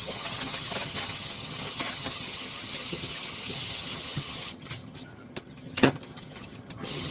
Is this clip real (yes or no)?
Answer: no